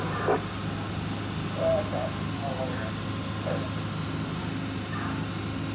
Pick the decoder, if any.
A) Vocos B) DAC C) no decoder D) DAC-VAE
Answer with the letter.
C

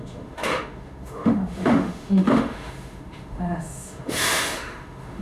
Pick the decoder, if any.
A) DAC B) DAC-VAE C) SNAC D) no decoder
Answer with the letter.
B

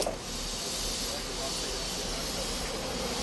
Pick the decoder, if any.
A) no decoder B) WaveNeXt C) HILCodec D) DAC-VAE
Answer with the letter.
A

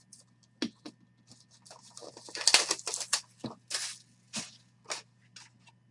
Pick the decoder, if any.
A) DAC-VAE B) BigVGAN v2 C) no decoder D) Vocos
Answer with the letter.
C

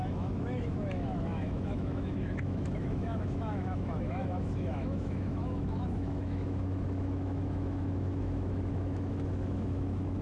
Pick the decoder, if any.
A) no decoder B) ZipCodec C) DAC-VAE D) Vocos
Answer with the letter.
C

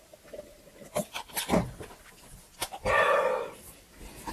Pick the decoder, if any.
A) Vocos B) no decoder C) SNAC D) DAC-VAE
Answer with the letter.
B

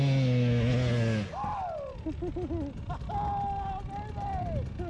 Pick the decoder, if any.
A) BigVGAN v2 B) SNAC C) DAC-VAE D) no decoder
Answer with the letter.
D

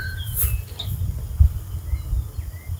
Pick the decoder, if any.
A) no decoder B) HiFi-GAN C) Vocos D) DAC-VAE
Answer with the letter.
A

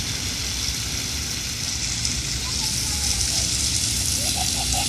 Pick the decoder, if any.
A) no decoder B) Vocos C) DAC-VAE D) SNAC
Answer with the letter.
A